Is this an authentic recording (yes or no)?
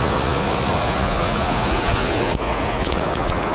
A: no